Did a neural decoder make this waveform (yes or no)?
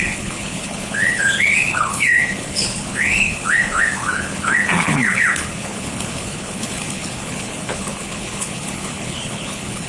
yes